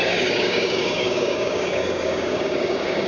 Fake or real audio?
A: fake